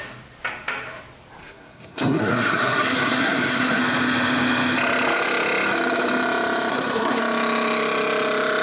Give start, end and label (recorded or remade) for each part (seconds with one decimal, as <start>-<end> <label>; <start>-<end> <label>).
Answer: 0.0-1.4 recorded; 1.4-3.8 remade; 3.8-6.7 recorded; 6.7-7.2 remade; 7.2-8.6 recorded